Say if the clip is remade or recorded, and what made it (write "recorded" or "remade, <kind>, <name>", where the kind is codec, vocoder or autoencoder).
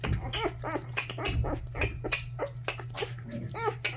recorded